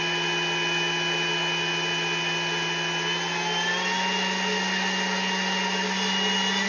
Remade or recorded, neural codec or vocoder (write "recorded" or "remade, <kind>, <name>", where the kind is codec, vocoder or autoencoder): recorded